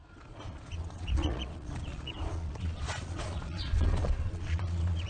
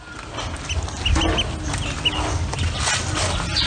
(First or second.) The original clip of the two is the second